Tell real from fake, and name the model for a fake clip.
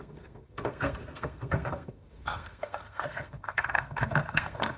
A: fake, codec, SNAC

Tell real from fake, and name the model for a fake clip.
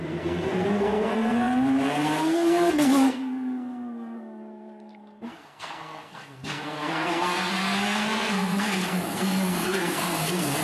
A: fake, codec, SNAC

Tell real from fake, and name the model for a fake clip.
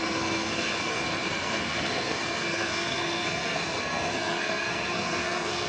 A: fake, codec, SNAC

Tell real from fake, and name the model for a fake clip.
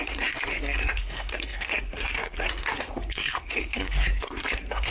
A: fake, codec, SNAC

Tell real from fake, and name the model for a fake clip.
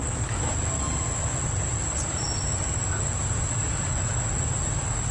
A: real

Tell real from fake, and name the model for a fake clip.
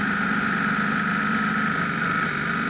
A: real